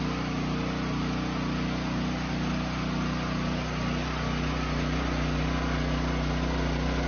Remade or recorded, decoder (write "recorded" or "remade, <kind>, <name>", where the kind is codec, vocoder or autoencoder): recorded